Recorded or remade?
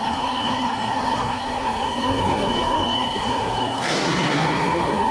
remade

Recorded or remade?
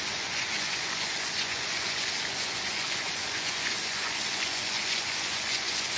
remade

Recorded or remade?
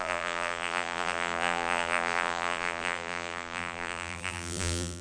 remade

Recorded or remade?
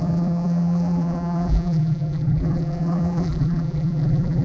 remade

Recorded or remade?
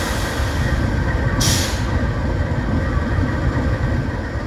recorded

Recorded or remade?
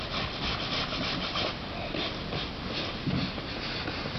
recorded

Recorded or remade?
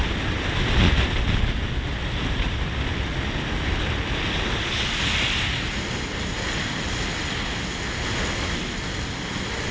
recorded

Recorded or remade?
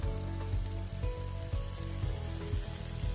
recorded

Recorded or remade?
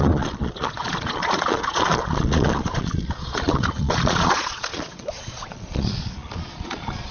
remade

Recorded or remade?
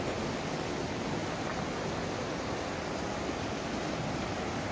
recorded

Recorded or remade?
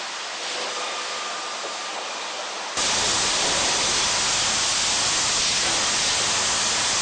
recorded